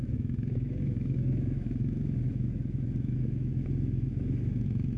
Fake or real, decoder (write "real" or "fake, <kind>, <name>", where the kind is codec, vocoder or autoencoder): fake, autoencoder, DAC-VAE